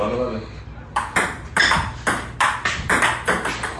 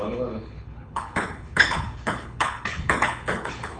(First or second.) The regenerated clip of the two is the second